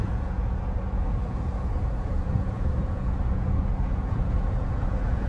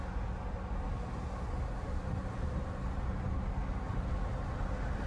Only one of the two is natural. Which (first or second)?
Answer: second